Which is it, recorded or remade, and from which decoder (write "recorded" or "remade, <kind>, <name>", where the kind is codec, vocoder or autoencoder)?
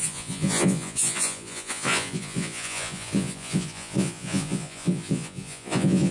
remade, vocoder, Vocos